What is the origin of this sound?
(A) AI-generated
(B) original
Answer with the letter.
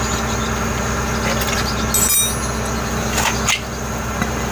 B